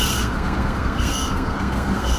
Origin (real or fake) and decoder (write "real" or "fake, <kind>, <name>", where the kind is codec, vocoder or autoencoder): fake, codec, SNAC